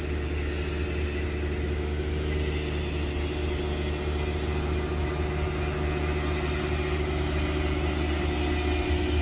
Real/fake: real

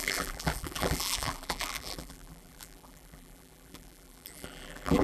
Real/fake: fake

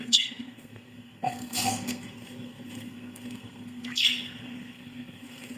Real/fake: fake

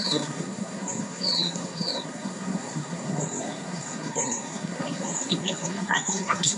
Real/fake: fake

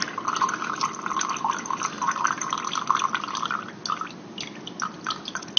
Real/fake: real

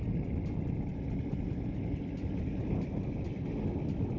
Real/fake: real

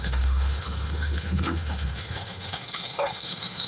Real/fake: fake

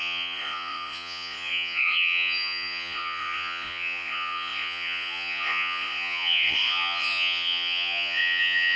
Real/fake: fake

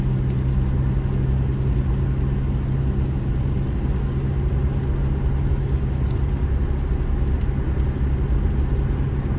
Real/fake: real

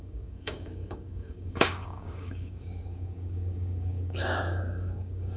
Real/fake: fake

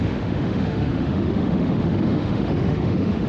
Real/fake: fake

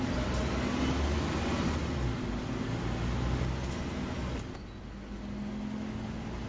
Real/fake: real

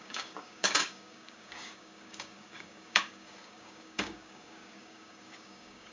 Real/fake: fake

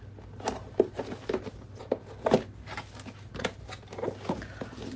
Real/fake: real